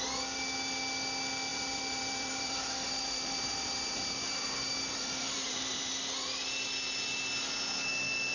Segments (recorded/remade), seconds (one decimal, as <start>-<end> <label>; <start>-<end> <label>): 0.0-1.5 recorded; 1.5-5.9 remade; 5.9-8.3 recorded